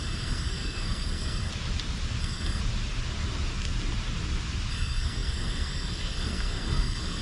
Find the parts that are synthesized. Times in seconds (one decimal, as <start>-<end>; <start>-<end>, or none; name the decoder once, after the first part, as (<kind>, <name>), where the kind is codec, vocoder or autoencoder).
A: 0.0-1.5 (codec, SNAC); 2.2-2.6; 4.7-7.2